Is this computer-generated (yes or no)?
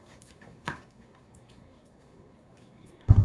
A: yes